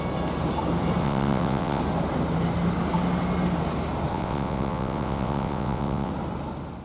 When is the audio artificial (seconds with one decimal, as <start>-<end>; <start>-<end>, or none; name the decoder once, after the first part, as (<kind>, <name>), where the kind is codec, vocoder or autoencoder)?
1.0-1.8 (vocoder, WaveNeXt); 4.1-6.1